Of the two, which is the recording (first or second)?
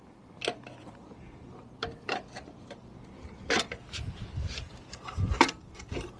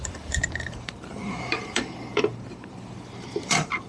first